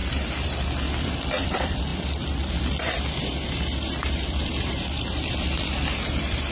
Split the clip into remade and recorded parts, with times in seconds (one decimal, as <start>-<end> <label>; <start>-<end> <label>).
0.0-6.5 remade